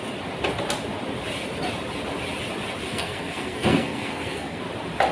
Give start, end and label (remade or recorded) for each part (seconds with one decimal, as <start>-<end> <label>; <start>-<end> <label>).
0.0-2.9 recorded; 2.9-4.6 remade; 4.6-5.1 recorded